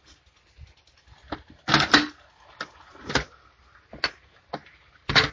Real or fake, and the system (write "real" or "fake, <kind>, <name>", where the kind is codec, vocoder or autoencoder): real